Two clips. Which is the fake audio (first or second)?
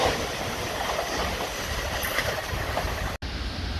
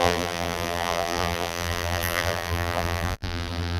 second